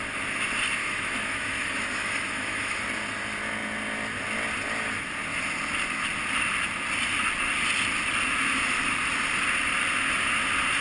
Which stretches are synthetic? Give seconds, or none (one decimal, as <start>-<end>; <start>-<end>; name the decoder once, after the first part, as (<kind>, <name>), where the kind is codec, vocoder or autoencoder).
0.8-2.8 (autoencoder, DAC-VAE)